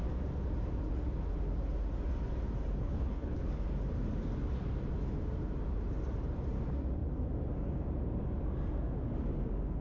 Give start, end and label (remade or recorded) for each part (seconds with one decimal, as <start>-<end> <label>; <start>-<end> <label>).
0.0-2.8 recorded; 2.8-3.4 remade; 3.4-9.8 recorded